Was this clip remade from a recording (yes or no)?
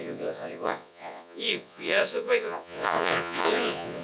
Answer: yes